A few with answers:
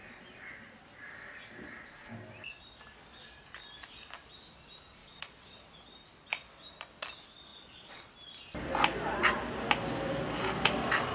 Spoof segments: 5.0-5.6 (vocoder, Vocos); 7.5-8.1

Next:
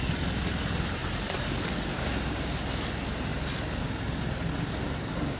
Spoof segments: 1.0-2.0 (vocoder, BigVGAN v2)

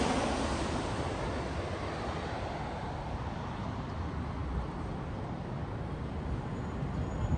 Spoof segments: none

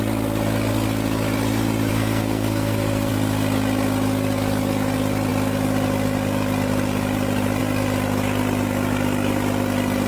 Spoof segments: 1.9-3.1 (codec, SNAC)

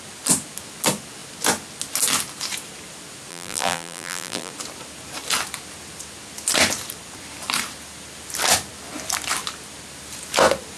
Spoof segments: 3.3-4.5 (vocoder, BigVGAN v2)

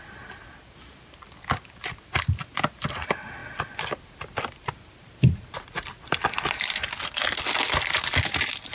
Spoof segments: none

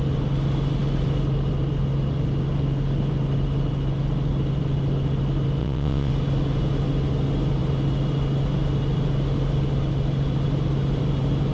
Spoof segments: 5.6-6.1 (vocoder, WaveNeXt)